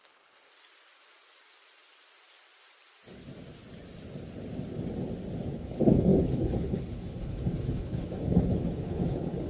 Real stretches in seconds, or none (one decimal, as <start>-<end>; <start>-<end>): 0.5-5.5